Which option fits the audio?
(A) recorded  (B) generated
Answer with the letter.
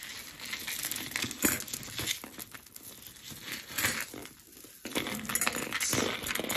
A